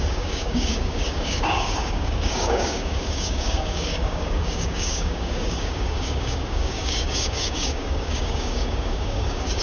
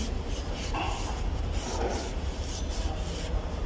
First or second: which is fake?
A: first